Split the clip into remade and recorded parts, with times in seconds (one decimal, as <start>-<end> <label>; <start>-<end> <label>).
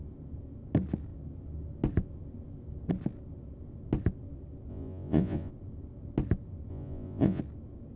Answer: 0.0-4.7 recorded; 4.7-5.5 remade; 5.5-6.7 recorded; 6.7-7.4 remade; 7.4-8.0 recorded